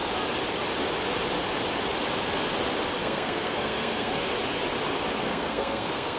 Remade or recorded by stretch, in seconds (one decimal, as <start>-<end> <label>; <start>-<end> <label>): 0.0-3.0 recorded; 3.0-4.1 remade; 4.1-5.3 recorded; 5.3-6.2 remade